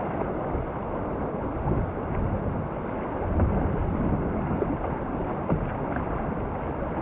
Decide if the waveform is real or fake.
real